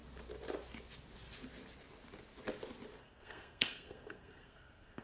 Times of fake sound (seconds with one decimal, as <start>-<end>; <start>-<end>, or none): 3.0-5.0